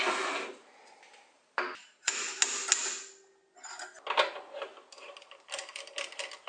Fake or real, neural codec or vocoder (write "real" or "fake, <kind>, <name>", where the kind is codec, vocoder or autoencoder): real